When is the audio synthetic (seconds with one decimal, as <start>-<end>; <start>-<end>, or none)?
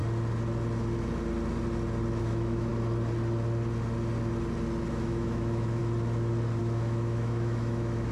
2.2-2.7; 4.9-5.8; 6.6-8.1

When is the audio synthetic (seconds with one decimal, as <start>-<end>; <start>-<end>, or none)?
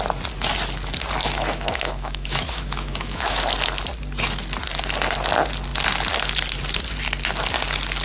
1.2-3.4